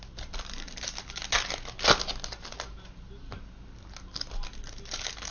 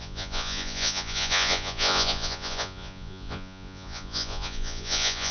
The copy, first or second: second